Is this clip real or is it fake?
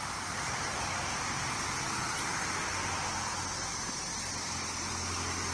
real